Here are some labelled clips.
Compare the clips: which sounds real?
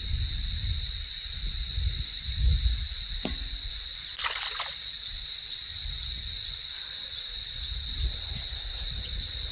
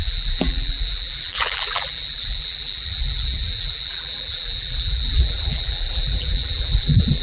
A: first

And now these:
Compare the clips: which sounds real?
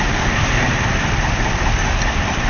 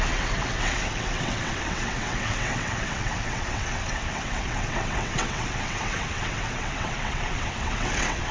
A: first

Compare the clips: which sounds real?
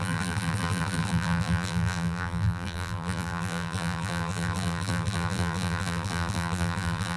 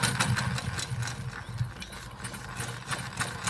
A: second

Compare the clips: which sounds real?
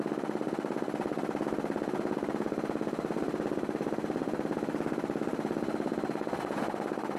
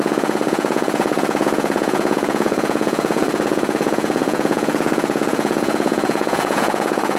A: first